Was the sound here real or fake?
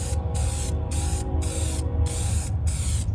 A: real